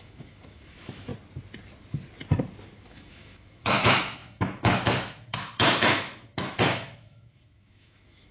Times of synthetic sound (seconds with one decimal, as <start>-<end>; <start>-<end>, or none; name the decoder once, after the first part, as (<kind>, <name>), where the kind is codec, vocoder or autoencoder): 0.0-1.1 (autoencoder, DAC-VAE); 2.8-8.3